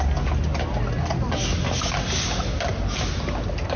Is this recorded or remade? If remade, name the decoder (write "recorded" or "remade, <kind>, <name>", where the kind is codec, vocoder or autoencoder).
recorded